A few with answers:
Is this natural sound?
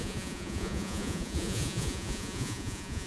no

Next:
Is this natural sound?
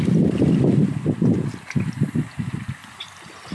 yes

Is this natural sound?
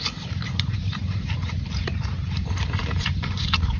no